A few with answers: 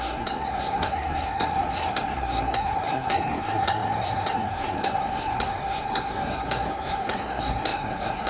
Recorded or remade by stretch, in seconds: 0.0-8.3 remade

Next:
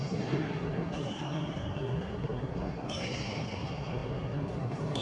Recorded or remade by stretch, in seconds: 0.0-5.0 remade

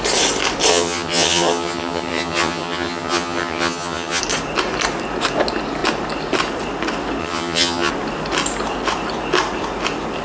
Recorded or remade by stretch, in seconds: 0.0-0.7 recorded; 0.7-4.2 remade; 4.2-7.2 recorded; 7.2-7.9 remade; 7.9-10.2 recorded

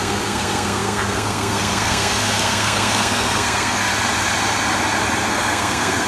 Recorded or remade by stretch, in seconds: 0.0-3.9 remade; 3.9-5.3 recorded; 5.3-6.1 remade